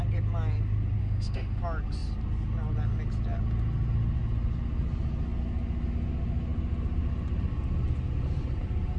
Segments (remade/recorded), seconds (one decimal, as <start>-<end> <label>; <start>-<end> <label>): 0.0-1.0 recorded; 1.0-1.6 remade; 1.6-9.0 recorded